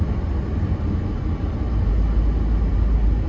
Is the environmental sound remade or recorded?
recorded